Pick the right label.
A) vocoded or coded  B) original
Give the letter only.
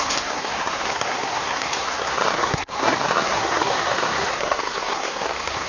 A